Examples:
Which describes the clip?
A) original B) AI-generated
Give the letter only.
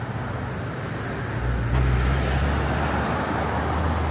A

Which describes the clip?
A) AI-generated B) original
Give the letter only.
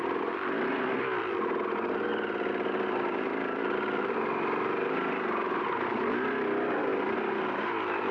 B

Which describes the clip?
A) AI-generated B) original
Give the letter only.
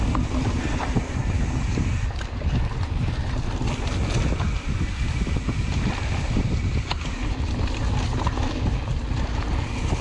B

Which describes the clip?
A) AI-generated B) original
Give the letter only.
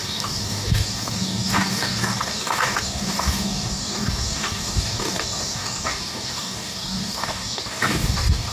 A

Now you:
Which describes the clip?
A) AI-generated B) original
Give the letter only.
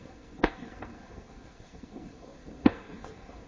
A